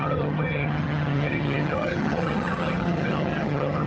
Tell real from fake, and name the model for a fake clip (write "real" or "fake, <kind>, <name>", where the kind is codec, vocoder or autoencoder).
fake, vocoder, HiFi-GAN